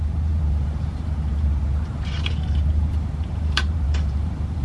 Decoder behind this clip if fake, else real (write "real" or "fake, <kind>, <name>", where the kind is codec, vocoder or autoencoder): fake, vocoder, BigVGAN v2